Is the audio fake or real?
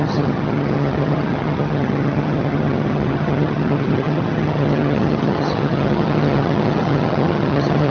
fake